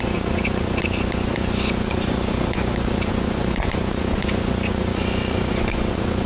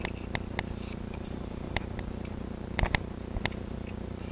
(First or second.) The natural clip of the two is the second